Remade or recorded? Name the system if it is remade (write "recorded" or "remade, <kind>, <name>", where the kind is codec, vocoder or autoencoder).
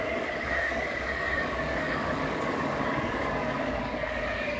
remade, codec, DAC